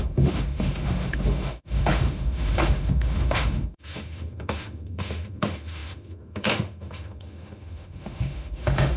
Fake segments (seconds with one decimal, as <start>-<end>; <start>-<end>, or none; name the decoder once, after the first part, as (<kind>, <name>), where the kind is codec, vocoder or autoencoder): 0.0-9.0 (autoencoder, DAC-VAE)